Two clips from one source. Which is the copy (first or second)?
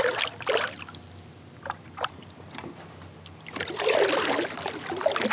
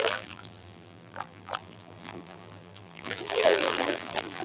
second